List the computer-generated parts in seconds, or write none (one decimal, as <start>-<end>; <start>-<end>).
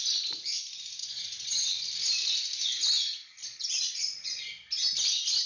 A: 1.0-1.8; 3.4-4.4